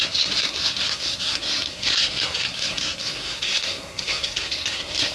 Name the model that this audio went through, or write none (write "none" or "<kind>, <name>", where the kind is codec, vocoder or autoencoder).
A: codec, SNAC